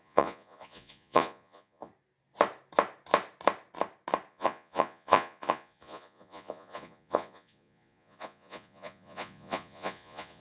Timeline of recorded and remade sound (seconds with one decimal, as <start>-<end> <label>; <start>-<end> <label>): 0.0-1.9 remade; 1.9-4.3 recorded; 4.3-10.4 remade